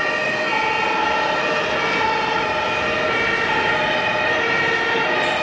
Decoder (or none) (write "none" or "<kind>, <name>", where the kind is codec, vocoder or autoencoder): none